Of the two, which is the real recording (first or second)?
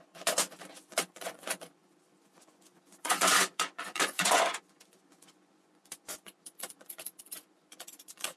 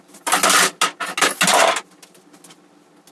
second